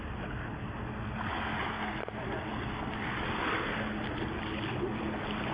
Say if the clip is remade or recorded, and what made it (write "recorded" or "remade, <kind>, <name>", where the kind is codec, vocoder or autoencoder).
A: recorded